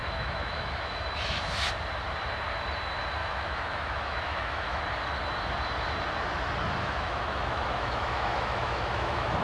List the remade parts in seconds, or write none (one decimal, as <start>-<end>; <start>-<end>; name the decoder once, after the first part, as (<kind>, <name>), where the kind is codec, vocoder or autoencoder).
0.0-1.7 (autoencoder, DAC-VAE); 3.2-4.8; 6.8-9.4